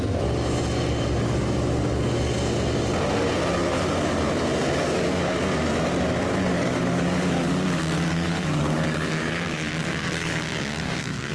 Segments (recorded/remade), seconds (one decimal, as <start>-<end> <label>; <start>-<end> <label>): 0.0-4.8 recorded; 4.8-5.4 remade; 5.4-6.5 recorded; 6.5-11.3 remade